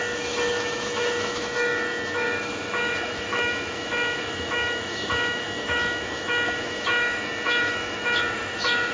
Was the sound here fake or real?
fake